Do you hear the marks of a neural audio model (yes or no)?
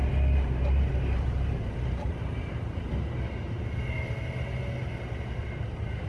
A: no